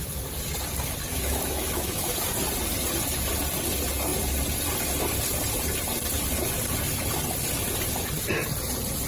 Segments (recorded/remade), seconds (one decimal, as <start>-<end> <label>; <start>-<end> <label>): 0.0-1.1 recorded; 1.1-2.2 remade; 2.2-9.1 recorded